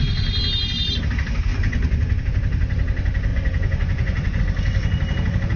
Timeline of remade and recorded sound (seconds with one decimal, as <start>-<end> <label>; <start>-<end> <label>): 0.0-1.5 recorded; 1.5-2.2 remade; 2.2-3.3 recorded; 3.3-4.4 remade; 4.4-5.6 recorded